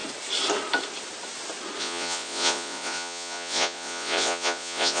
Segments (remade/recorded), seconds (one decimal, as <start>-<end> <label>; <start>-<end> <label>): 0.0-1.8 recorded; 1.8-5.0 remade